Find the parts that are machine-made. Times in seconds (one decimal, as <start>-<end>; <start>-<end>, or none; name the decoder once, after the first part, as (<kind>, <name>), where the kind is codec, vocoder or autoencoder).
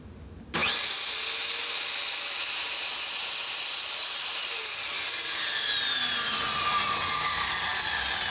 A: 7.7-8.3 (vocoder, BigVGAN v2)